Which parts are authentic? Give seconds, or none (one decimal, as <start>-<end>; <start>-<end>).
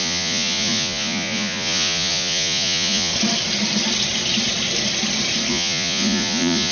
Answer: 3.1-5.5